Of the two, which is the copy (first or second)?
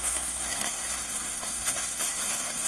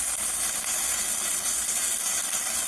first